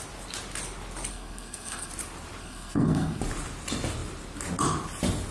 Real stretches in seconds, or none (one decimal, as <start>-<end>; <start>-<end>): 0.0-1.1; 1.9-2.4; 3.2-5.3